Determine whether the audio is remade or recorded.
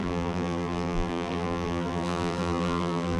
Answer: remade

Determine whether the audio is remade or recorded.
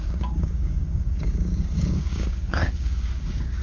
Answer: remade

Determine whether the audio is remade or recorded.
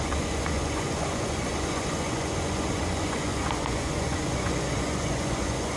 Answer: remade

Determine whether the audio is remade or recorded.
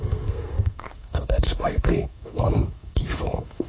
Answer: remade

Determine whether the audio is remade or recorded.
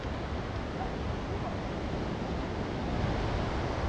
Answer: recorded